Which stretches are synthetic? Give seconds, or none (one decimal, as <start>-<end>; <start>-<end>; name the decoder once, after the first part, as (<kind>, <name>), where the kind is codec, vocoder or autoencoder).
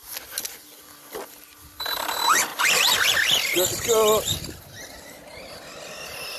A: 2.5-6.4 (vocoder, BigVGAN v2)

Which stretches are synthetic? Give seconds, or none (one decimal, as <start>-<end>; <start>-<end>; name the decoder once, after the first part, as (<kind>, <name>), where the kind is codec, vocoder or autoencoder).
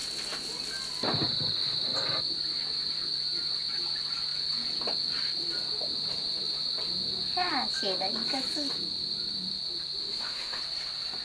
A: 10.0-10.6 (autoencoder, DAC-VAE)